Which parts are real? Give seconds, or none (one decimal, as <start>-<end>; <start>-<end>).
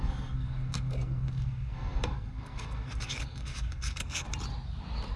4.3-5.2